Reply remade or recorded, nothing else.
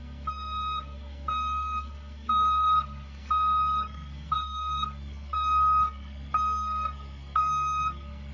remade